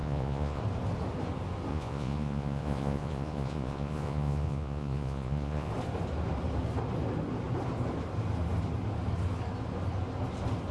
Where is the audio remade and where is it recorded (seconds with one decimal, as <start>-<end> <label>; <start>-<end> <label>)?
0.0-0.6 remade; 0.6-1.7 recorded; 1.7-5.7 remade; 5.7-10.7 recorded